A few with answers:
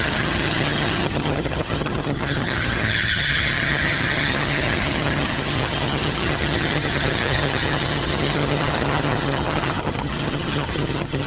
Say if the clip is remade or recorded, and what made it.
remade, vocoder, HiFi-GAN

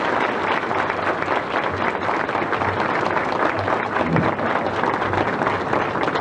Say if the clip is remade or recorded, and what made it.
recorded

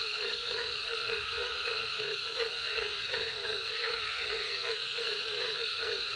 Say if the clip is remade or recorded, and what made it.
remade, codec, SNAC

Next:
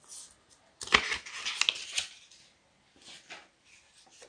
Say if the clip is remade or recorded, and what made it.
recorded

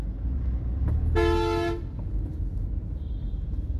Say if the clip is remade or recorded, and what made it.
recorded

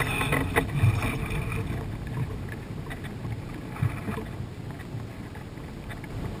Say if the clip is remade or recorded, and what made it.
recorded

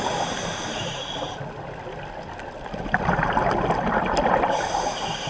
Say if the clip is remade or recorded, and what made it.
recorded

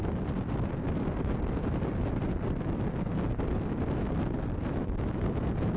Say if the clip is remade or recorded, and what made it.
recorded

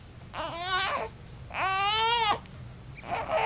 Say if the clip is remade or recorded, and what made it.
recorded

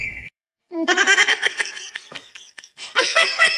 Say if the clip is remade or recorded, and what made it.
remade, codec, SNAC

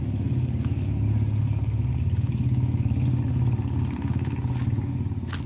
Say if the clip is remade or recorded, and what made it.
recorded